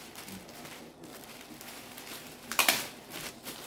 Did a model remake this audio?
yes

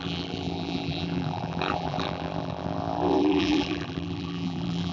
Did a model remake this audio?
yes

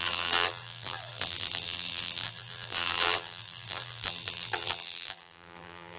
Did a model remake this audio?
yes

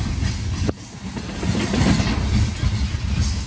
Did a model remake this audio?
no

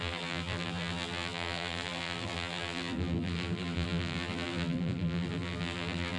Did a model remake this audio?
yes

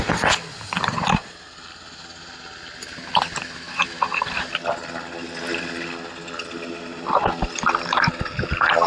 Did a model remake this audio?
no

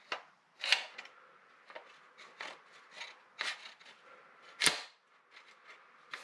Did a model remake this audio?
no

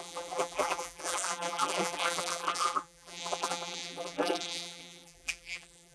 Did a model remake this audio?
yes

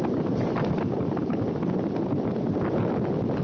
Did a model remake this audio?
yes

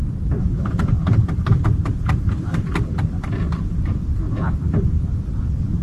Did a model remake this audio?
yes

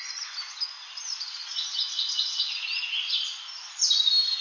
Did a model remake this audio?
no